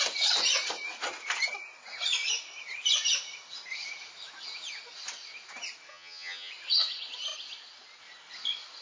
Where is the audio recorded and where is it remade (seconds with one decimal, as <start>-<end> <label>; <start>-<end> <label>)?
0.0-5.9 recorded; 5.9-6.5 remade; 6.5-8.8 recorded